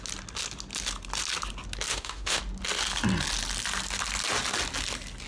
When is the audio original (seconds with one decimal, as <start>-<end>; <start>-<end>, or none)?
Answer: 0.0-1.9; 2.4-5.3